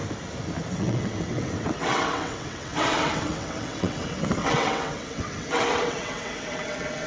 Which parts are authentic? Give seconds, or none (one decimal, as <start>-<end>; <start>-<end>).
0.0-0.7